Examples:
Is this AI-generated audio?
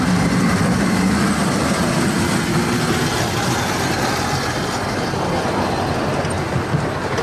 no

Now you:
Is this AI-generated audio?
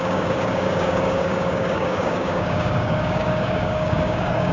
yes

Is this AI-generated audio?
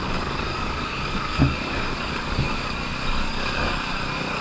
yes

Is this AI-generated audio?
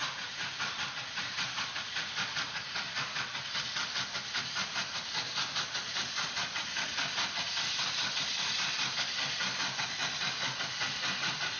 no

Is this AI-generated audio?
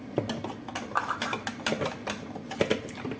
no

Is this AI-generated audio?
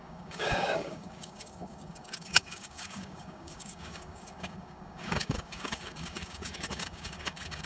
yes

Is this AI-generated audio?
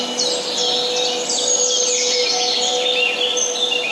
no